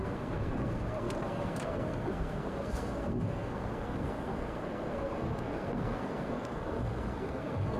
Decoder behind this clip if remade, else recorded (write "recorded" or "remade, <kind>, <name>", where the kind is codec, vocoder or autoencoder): remade, codec, SNAC